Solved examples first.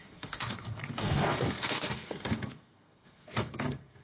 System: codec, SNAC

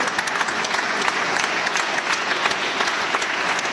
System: vocoder, Vocos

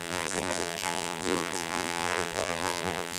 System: vocoder, BigVGAN v2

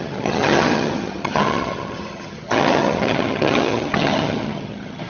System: vocoder, HiFi-GAN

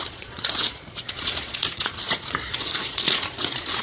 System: vocoder, Vocos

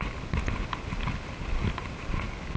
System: none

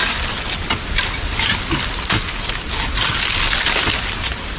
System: none